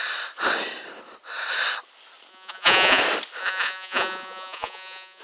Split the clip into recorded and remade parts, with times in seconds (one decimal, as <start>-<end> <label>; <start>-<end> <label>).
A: 0.0-2.3 recorded; 2.3-3.0 remade; 3.0-3.4 recorded; 3.4-5.2 remade

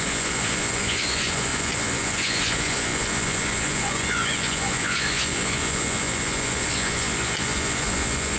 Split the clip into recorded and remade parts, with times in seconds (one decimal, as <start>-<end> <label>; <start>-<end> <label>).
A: 0.0-8.4 remade

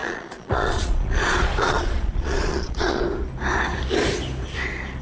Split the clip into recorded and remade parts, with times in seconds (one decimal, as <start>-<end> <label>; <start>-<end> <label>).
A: 0.0-3.0 remade; 3.0-5.0 recorded

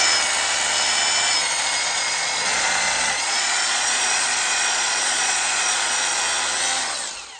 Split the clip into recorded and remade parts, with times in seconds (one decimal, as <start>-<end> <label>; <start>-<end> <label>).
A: 0.0-1.8 recorded; 1.8-6.2 remade; 6.2-7.4 recorded

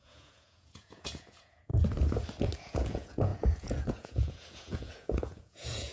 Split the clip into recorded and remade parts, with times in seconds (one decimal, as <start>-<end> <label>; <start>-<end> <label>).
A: 0.0-1.7 remade; 1.7-2.6 recorded; 2.6-5.9 remade

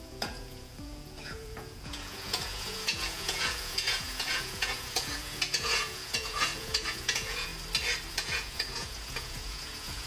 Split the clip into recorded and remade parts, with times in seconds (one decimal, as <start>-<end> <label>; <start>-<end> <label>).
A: 0.0-7.5 remade; 7.5-8.1 recorded; 8.1-10.1 remade

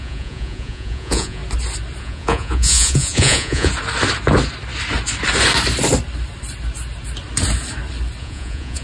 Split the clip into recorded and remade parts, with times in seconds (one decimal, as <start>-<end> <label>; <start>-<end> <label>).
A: 0.0-1.4 remade; 1.4-2.0 recorded; 2.0-3.7 remade; 3.7-8.2 recorded; 8.2-8.8 remade

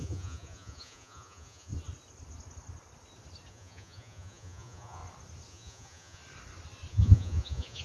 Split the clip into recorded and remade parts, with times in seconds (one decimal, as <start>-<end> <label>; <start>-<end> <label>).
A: 0.0-1.7 remade; 1.7-3.5 recorded; 3.5-5.0 remade; 5.0-5.5 recorded; 5.5-6.2 remade; 6.2-6.9 recorded; 6.9-7.8 remade